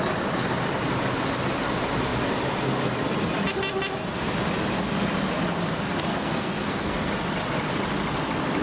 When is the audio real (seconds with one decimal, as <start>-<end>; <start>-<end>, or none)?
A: 0.0-6.1; 7.1-8.6